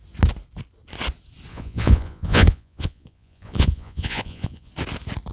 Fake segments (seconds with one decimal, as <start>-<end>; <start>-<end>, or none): 1.5-4.7